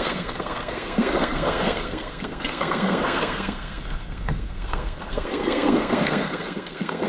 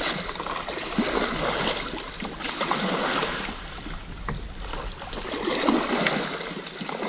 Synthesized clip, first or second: first